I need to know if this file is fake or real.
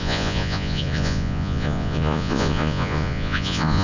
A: fake